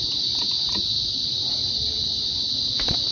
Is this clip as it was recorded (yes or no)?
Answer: yes